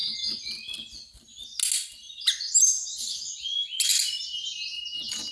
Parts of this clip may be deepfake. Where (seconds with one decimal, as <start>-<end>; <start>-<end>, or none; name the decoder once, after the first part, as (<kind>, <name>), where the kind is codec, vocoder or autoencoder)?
none